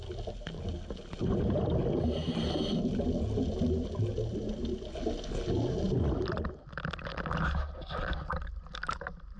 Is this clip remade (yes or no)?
no